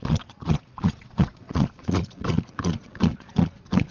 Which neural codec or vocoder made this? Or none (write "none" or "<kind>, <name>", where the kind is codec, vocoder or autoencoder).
vocoder, Vocos